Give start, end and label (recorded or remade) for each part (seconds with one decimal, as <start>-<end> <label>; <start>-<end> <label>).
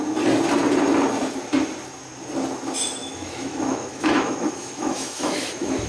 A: 0.0-3.0 recorded; 3.0-5.9 remade